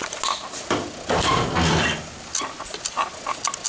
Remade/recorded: recorded